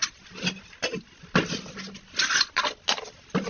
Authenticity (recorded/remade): recorded